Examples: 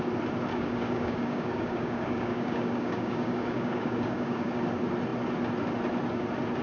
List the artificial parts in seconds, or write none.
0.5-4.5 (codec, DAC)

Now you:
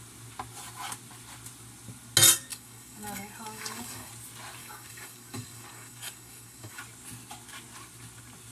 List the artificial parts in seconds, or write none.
2.5-4.1 (codec, DAC); 4.6-6.8